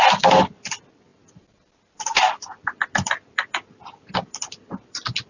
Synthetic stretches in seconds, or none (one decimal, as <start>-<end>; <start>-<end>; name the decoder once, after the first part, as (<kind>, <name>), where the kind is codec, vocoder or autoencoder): none